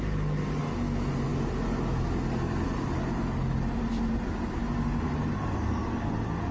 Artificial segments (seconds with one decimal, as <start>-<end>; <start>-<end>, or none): none